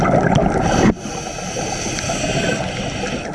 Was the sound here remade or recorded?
recorded